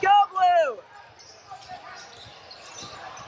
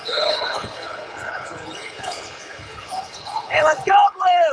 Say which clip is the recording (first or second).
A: first